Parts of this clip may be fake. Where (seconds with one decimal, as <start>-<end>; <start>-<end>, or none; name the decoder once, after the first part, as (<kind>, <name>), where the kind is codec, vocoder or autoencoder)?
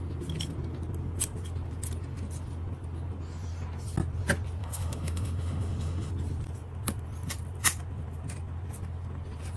4.6-6.1 (autoencoder, DAC-VAE)